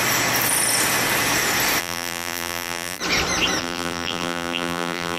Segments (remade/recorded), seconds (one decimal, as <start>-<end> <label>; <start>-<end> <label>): 0.0-1.8 recorded; 1.8-3.0 remade; 3.0-3.6 recorded; 3.6-5.2 remade